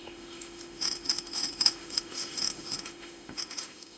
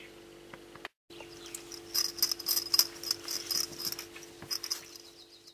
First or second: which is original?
second